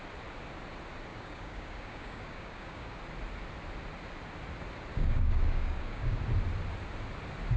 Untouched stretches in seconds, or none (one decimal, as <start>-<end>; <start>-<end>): 0.0-1.1; 3.0-4.9; 6.2-7.6